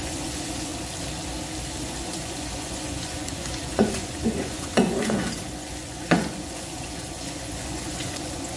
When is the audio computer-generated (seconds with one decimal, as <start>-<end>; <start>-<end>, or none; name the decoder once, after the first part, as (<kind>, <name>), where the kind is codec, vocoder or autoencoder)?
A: 0.0-0.7 (vocoder, Vocos); 1.8-8.6